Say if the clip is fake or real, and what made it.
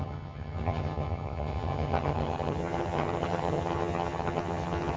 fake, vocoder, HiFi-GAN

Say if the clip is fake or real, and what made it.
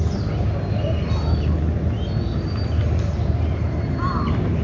real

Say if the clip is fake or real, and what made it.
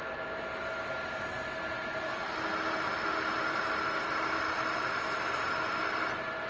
real